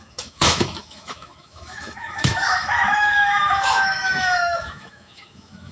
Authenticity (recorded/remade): remade